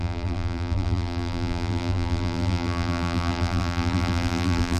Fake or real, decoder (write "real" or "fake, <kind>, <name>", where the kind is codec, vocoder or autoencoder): fake, vocoder, BigVGAN v2